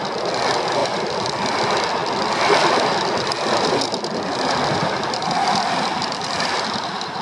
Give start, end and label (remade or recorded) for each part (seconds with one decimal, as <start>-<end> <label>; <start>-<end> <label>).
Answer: 0.0-0.8 recorded; 0.8-1.6 remade; 1.6-2.0 recorded; 2.0-5.5 remade; 5.5-7.2 recorded